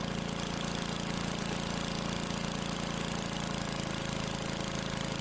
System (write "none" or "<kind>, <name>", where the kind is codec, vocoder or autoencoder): none